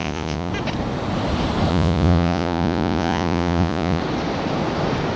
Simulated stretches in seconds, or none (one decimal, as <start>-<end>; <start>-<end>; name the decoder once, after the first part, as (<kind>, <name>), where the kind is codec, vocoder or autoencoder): 0.0-0.5 (vocoder, Vocos); 1.7-4.0